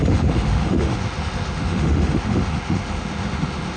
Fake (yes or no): yes